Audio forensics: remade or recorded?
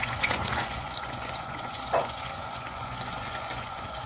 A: remade